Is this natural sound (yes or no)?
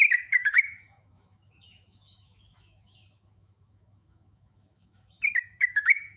no